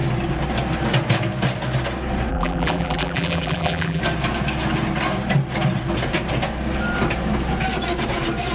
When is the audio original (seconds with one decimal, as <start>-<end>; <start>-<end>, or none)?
0.0-2.3; 4.0-8.5